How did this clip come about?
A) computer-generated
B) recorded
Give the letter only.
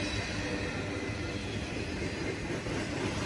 B